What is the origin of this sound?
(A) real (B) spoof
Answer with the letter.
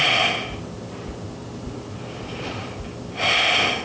A